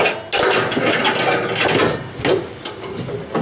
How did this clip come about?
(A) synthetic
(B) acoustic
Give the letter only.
B